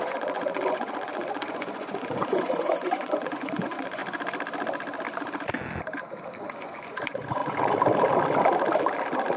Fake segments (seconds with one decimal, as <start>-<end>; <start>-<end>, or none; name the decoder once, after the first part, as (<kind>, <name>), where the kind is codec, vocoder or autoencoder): 0.0-4.0 (vocoder, Vocos); 6.6-7.4